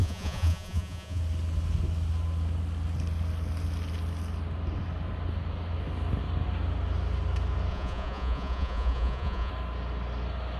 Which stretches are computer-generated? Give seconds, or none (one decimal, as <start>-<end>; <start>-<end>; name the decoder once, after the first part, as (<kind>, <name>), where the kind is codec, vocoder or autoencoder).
0.0-1.2 (vocoder, Vocos); 7.7-9.5